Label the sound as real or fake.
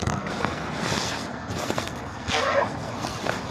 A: fake